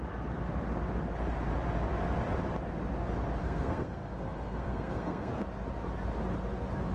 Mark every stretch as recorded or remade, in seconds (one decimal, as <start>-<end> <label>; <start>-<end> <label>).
0.0-3.4 recorded; 3.4-5.3 remade; 5.3-6.9 recorded